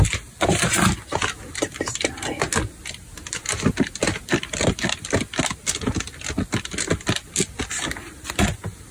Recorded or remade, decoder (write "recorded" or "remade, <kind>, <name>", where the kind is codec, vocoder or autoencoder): recorded